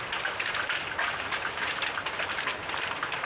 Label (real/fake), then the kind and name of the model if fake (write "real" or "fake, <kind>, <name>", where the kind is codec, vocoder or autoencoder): fake, vocoder, BigVGAN v2